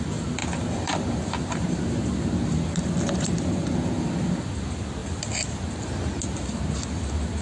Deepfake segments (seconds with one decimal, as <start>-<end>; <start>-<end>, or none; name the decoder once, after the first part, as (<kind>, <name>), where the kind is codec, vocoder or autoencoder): none